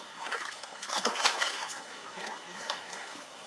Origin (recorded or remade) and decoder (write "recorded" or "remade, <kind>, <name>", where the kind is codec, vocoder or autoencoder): remade, codec, SNAC